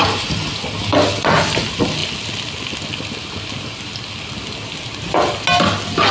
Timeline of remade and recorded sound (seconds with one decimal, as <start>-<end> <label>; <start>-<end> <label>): 0.0-6.1 recorded